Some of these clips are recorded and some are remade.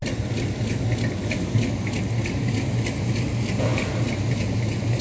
recorded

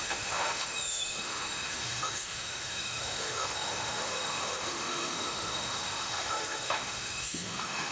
remade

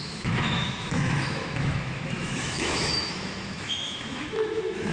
remade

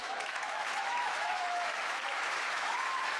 remade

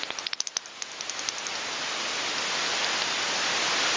recorded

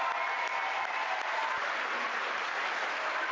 recorded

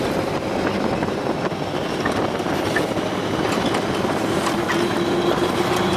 recorded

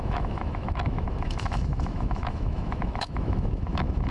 remade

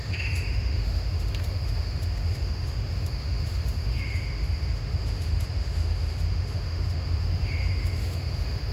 remade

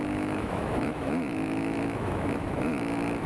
remade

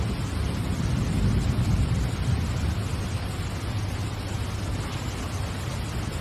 recorded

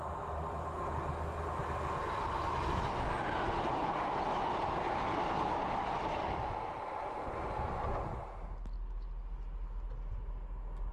recorded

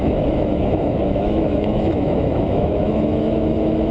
remade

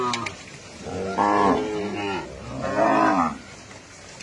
recorded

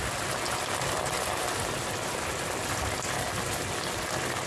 recorded